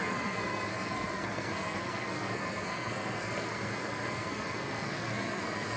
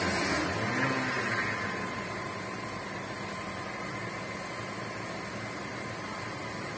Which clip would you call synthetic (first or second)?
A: first